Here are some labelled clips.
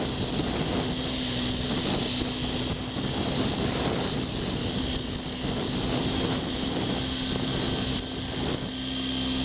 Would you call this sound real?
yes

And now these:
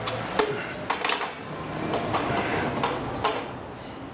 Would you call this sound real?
yes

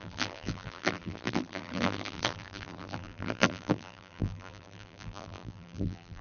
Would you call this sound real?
no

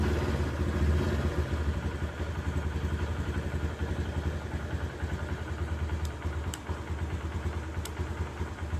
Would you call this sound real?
yes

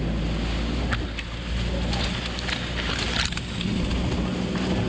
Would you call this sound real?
yes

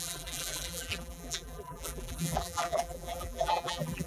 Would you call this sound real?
no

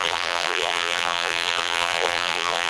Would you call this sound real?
no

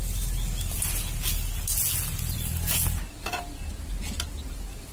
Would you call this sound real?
yes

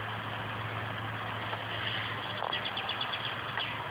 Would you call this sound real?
yes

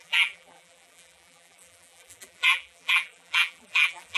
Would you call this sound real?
no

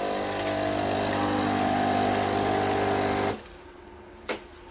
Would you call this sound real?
yes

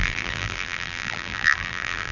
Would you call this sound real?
no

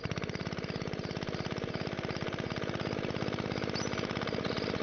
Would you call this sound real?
yes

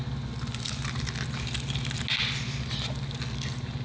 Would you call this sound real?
yes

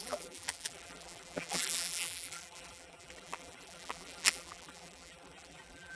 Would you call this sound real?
no